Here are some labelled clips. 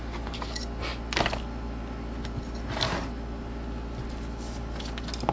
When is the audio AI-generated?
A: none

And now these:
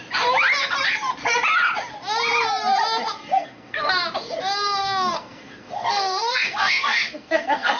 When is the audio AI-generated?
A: 3.2-3.9 (codec, SNAC); 4.8-7.8